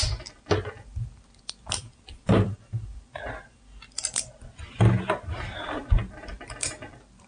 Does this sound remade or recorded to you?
remade